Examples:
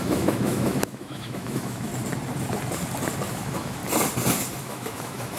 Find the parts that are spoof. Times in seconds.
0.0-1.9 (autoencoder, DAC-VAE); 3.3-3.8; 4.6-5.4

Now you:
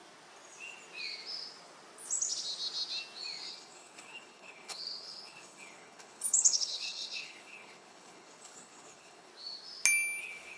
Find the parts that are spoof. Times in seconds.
3.5-9.3 (codec, HILCodec); 10.2-10.6